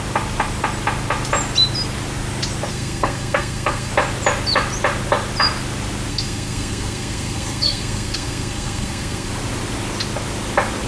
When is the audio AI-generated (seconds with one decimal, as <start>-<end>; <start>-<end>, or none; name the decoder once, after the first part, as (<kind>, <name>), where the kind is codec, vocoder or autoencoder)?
2.7-3.9 (codec, SNAC); 6.1-9.3